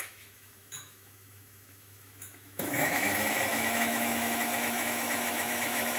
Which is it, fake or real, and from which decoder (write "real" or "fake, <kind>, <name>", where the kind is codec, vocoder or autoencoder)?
fake, autoencoder, DAC-VAE